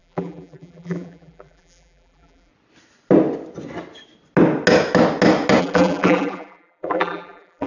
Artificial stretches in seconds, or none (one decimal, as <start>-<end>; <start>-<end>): 0.0-2.5; 5.6-7.7